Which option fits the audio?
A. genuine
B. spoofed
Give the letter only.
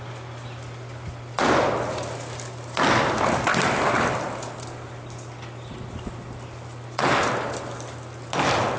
A